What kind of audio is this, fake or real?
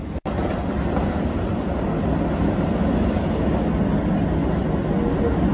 real